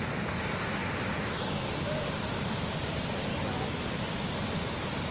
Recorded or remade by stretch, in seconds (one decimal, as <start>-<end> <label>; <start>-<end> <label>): 0.0-3.3 recorded; 3.3-4.0 remade; 4.0-5.1 recorded